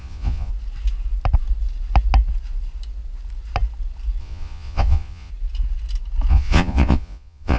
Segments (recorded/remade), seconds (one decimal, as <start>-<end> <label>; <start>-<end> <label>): 0.0-0.5 remade; 0.5-4.2 recorded; 4.2-5.3 remade; 5.3-6.3 recorded; 6.3-7.6 remade